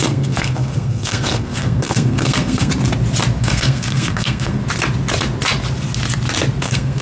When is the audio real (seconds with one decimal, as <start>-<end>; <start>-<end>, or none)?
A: 2.7-3.4; 4.6-6.6